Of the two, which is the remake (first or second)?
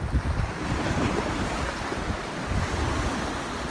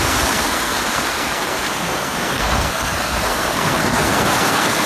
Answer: second